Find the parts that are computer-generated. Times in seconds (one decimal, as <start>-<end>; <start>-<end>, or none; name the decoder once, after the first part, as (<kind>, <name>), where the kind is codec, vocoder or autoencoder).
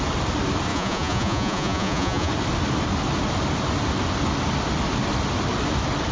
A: 0.7-2.3 (vocoder, Vocos)